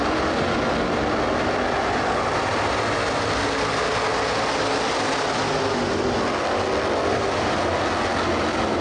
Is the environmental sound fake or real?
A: real